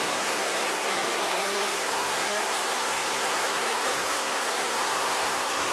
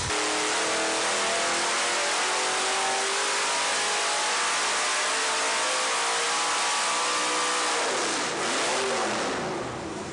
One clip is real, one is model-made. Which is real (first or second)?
second